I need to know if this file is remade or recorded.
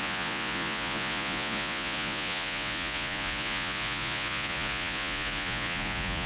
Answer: remade